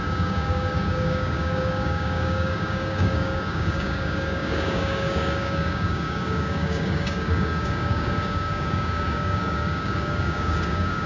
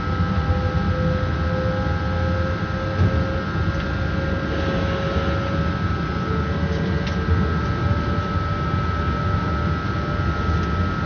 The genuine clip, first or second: second